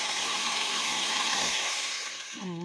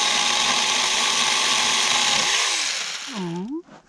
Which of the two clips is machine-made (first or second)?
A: first